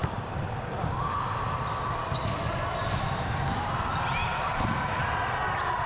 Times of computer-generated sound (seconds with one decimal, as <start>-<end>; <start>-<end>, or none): 0.0-2.2